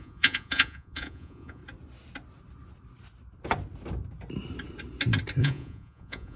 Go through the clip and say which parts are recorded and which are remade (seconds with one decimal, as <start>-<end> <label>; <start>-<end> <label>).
0.0-1.6 remade; 1.6-5.4 recorded; 5.4-6.4 remade